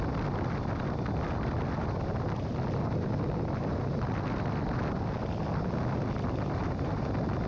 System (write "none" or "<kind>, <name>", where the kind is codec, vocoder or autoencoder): none